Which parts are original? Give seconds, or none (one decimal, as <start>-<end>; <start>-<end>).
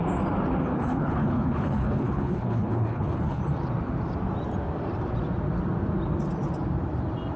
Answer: 0.0-0.7; 3.4-7.4